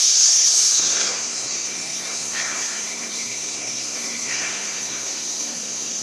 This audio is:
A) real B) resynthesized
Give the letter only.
B